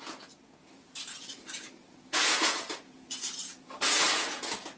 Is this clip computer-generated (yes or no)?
yes